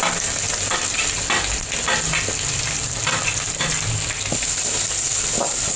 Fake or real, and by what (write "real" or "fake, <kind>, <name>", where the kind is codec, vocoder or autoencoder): real